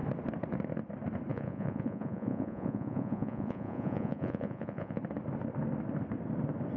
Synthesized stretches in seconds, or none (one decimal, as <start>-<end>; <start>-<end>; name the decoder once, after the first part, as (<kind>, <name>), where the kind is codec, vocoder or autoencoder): 1.3-5.0 (vocoder, Vocos)